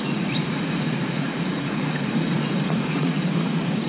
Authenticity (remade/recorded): remade